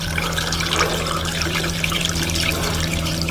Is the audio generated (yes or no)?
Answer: yes